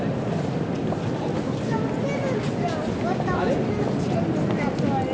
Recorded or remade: recorded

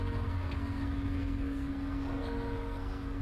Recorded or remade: remade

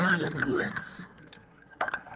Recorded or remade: remade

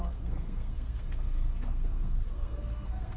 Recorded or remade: remade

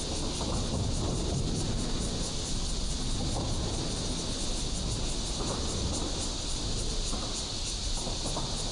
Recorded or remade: recorded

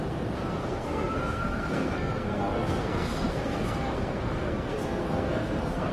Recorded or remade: remade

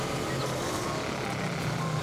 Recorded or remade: recorded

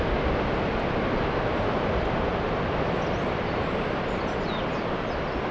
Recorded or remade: recorded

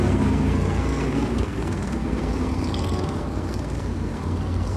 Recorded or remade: remade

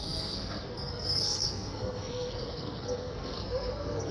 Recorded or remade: remade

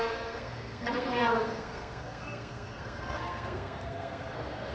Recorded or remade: remade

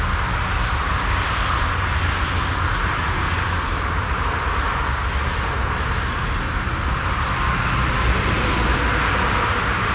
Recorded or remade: recorded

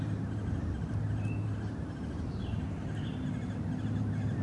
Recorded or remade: recorded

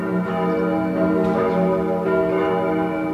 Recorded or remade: recorded